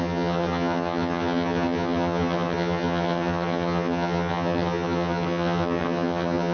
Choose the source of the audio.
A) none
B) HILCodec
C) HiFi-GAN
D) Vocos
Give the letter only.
C